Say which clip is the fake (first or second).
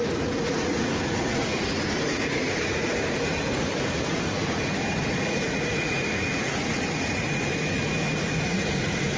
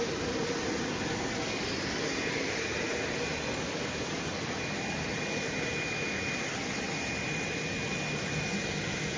first